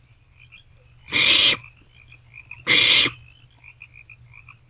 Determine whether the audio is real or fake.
real